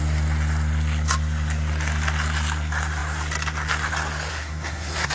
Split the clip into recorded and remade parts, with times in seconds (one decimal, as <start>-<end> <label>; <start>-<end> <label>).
0.0-4.3 recorded; 4.3-5.1 remade